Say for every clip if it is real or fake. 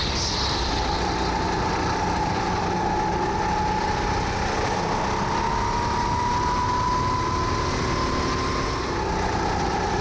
real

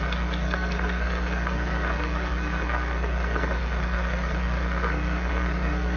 fake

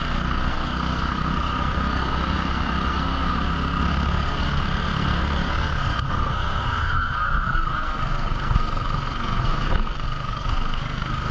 fake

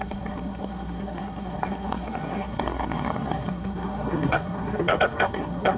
fake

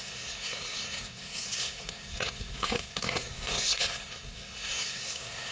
fake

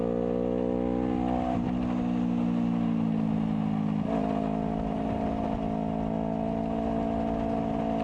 real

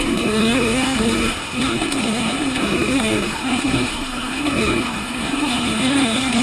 fake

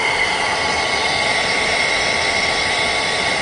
real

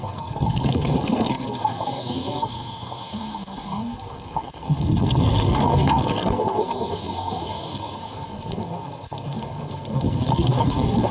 fake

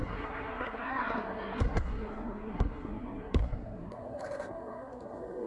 fake